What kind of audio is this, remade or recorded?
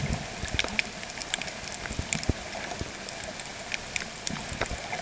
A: recorded